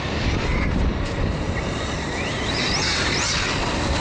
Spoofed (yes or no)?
no